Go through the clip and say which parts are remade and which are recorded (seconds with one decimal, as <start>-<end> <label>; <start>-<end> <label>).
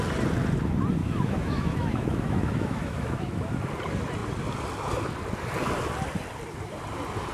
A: 0.0-1.0 recorded; 1.0-3.5 remade; 3.5-7.3 recorded